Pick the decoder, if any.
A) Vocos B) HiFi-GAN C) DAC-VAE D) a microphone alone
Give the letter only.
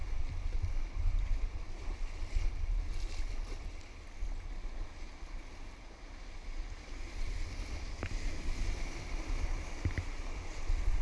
D